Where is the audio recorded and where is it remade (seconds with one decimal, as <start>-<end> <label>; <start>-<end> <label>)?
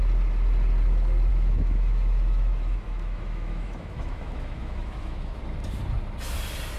0.0-1.3 recorded; 1.3-5.4 remade; 5.4-6.8 recorded